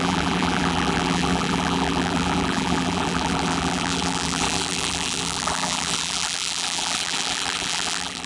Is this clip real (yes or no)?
no